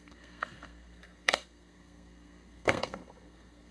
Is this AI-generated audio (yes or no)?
yes